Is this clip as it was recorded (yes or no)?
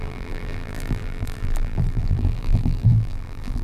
no